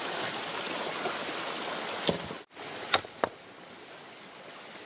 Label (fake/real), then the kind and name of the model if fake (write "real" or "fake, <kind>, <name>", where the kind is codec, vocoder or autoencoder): real